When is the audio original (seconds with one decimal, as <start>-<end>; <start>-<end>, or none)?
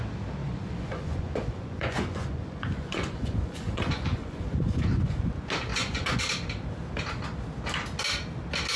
0.0-0.4; 5.2-5.7; 6.2-8.8